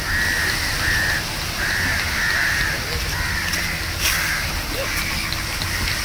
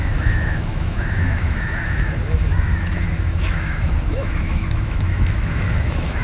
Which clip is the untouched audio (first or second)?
first